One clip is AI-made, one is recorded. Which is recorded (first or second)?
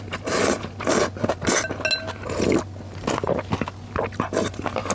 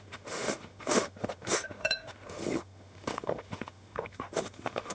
first